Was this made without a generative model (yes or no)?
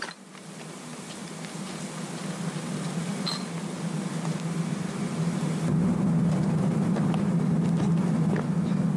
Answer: yes